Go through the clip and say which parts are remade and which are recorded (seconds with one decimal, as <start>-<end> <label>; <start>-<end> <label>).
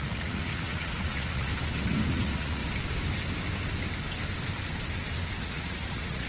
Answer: 0.0-1.5 remade; 1.5-2.1 recorded; 2.1-2.6 remade; 2.6-5.4 recorded; 5.4-6.3 remade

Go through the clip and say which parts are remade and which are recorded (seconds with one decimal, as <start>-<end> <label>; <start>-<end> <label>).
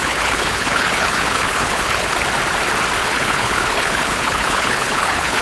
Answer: 0.0-2.1 remade; 2.1-3.0 recorded; 3.0-5.4 remade